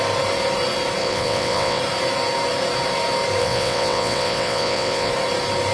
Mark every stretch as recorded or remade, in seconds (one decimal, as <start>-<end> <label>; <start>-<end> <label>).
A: 0.0-1.0 recorded; 1.0-1.8 remade; 1.8-3.4 recorded; 3.4-5.1 remade; 5.1-5.7 recorded